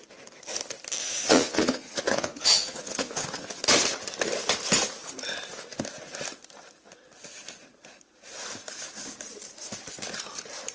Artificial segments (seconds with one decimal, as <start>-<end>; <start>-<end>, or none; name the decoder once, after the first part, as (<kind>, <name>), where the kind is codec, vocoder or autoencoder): 1.0-3.6 (vocoder, Vocos)